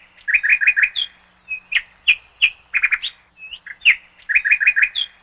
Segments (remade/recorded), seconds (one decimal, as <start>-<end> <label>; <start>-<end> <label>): 0.0-5.2 recorded